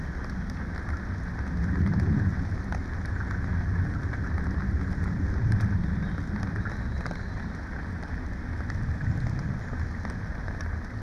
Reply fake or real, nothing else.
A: real